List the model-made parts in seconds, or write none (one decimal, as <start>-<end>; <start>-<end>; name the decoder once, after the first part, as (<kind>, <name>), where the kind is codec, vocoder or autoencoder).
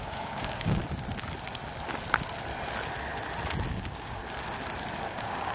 0.0-0.8 (codec, DAC); 3.7-4.2; 5.0-5.5